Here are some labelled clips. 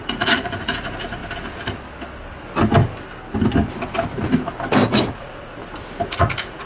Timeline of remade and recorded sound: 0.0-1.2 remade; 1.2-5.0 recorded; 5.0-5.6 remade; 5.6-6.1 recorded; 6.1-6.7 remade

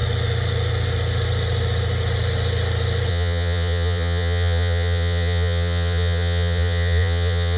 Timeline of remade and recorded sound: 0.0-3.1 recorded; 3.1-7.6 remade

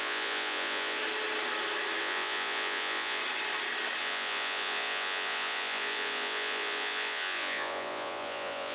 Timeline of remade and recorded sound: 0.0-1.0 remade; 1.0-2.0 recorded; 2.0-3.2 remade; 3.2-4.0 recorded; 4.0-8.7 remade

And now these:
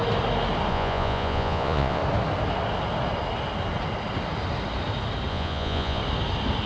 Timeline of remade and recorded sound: 0.0-0.7 recorded; 0.7-2.0 remade; 2.0-5.3 recorded; 5.3-6.0 remade; 6.0-6.7 recorded

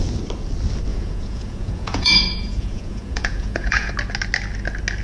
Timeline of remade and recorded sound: 0.0-0.9 recorded; 0.9-3.9 remade; 3.9-5.0 recorded

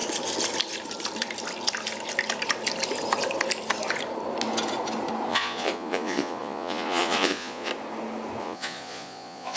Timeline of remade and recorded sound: 0.0-5.3 recorded; 5.3-7.7 remade; 7.7-8.4 recorded; 8.4-9.6 remade

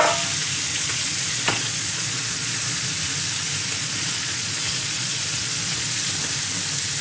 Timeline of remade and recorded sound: 0.0-0.7 recorded; 0.7-2.9 remade; 2.9-3.8 recorded; 3.8-6.1 remade; 6.1-7.0 recorded